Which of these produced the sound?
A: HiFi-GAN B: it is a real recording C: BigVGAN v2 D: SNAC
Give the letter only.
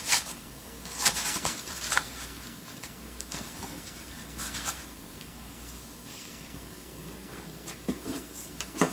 D